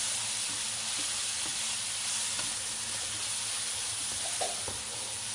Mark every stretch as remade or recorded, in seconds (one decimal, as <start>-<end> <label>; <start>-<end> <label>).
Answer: 0.0-5.3 recorded